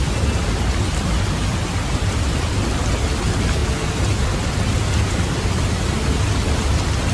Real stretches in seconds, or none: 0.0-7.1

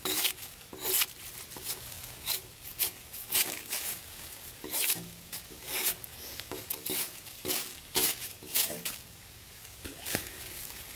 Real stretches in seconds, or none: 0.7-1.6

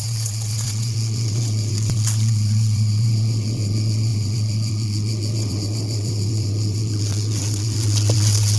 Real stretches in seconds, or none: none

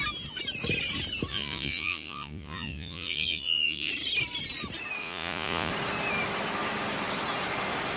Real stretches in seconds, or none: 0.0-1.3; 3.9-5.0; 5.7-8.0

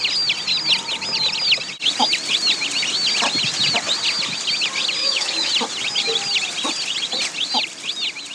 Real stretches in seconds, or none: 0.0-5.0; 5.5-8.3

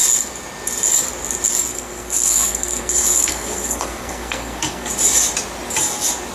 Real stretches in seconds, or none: 0.0-1.7; 4.9-6.3

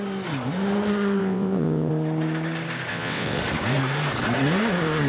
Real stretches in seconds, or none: 0.0-1.2; 1.9-2.9; 3.4-5.1

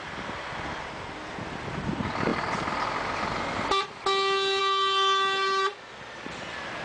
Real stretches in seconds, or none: 0.0-6.8